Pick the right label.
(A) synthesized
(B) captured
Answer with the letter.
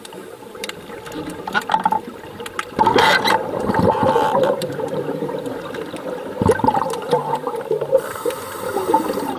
A